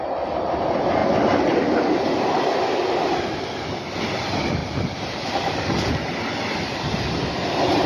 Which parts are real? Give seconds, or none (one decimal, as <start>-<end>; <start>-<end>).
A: 0.0-4.6; 5.3-7.9